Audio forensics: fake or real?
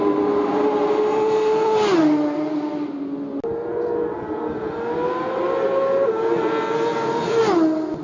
real